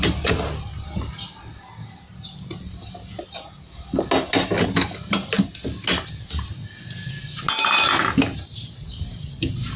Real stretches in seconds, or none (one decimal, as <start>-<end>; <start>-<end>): 0.0-8.3